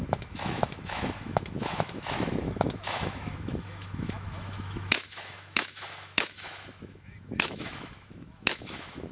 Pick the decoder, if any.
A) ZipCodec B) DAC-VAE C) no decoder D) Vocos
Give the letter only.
B